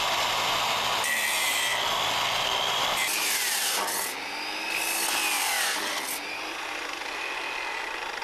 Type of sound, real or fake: real